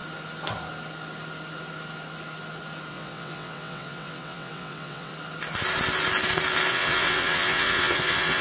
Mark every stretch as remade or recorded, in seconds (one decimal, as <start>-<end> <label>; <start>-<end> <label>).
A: 0.0-2.9 recorded; 2.9-5.1 remade; 5.1-6.7 recorded; 6.7-8.4 remade

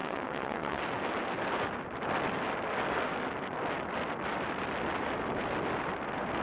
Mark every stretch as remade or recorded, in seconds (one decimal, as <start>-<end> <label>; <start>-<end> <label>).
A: 0.0-0.8 remade; 0.8-6.4 recorded

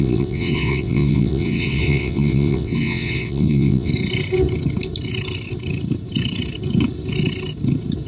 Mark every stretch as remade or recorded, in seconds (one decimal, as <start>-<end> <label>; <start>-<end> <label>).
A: 0.0-3.9 remade; 3.9-8.1 recorded

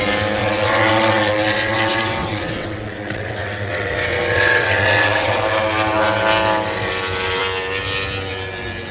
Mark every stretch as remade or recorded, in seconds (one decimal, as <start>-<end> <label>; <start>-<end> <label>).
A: 0.0-0.4 recorded; 0.4-5.4 remade; 5.4-8.9 recorded

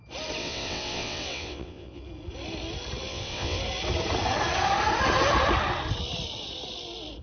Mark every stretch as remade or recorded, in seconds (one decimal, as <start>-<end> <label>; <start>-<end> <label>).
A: 0.0-0.4 recorded; 0.4-2.0 remade; 2.0-3.1 recorded; 3.1-3.6 remade; 3.6-7.2 recorded

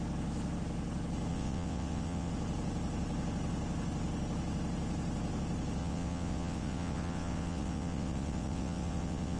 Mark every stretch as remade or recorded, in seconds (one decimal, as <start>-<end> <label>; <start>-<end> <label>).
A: 0.0-1.3 recorded; 1.3-2.3 remade; 2.3-5.8 recorded; 5.8-9.4 remade